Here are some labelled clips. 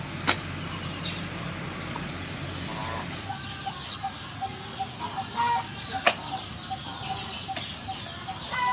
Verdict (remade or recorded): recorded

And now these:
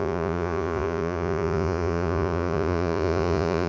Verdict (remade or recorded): remade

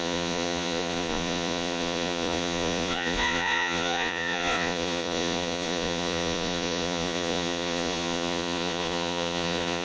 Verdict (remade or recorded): remade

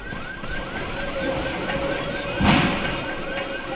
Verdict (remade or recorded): recorded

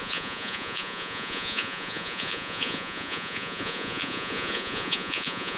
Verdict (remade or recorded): remade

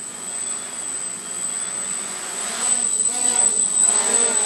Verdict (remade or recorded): remade